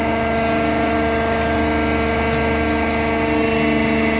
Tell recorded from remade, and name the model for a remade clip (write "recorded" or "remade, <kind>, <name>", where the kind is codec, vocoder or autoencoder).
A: recorded